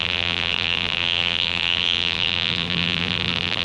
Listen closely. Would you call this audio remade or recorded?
remade